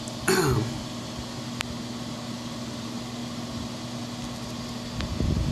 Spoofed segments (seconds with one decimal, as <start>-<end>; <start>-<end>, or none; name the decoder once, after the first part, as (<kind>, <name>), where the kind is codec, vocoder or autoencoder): none